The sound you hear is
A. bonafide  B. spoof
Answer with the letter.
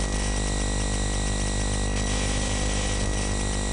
A